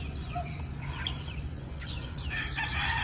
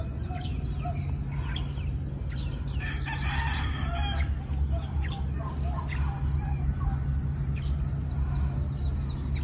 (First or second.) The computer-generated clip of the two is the first